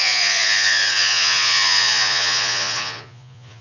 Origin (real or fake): fake